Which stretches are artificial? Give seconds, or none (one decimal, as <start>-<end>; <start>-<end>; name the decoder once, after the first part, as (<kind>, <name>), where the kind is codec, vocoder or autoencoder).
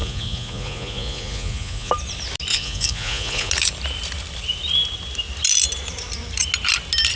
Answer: 0.0-1.9 (vocoder, Vocos); 2.5-3.5